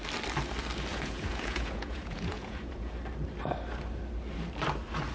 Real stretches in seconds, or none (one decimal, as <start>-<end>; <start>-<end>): 0.0-0.9; 2.9-5.1